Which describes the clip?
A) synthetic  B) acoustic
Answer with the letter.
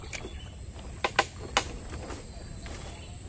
B